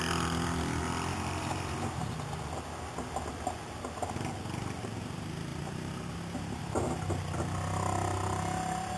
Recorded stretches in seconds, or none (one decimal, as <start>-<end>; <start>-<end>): 0.0-1.1; 2.1-5.5; 6.6-9.0